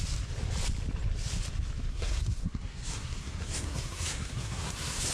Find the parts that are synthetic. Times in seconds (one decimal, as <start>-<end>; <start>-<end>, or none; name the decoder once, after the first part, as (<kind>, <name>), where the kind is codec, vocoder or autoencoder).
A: 1.9-5.1 (codec, SNAC)